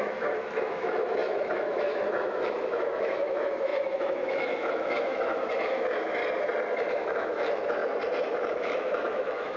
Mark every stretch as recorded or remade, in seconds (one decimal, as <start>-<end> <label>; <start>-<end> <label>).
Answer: 0.0-6.2 remade; 6.2-6.9 recorded; 6.9-7.8 remade; 7.8-8.5 recorded; 8.5-9.6 remade